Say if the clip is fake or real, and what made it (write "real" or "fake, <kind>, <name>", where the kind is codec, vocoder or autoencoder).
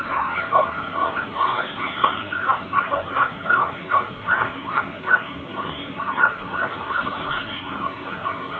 fake, codec, SNAC